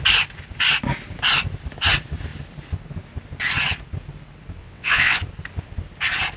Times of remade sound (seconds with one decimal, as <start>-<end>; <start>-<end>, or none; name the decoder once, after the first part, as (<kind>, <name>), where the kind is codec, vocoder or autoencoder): 4.6-5.2 (vocoder, WaveNeXt)